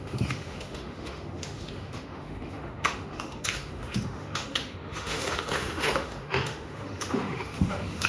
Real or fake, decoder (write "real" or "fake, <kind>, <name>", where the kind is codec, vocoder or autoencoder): fake, autoencoder, DAC-VAE